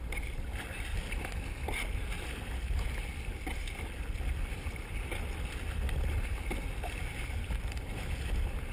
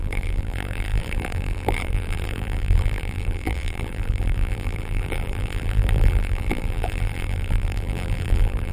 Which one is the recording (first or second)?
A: first